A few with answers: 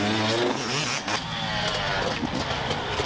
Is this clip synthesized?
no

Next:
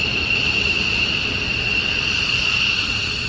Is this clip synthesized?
no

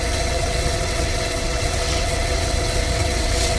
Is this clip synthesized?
yes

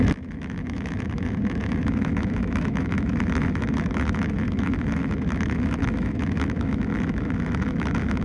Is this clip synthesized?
yes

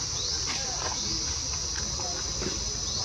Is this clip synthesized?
no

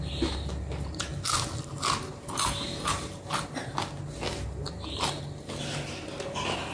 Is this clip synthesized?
no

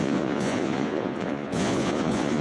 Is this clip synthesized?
yes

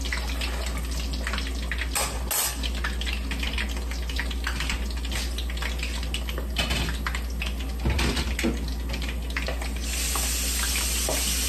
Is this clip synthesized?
no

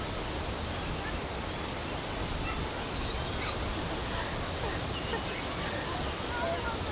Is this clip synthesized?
no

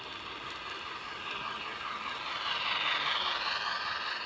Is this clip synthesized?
no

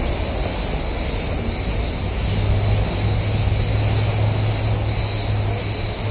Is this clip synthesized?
no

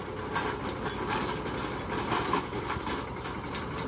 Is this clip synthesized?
no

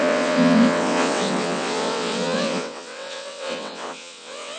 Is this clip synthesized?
yes